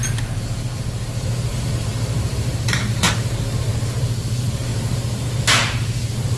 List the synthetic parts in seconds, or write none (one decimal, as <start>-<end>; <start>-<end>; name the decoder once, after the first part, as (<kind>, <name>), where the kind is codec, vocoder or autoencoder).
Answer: 0.0-4.7 (vocoder, BigVGAN v2); 5.7-6.4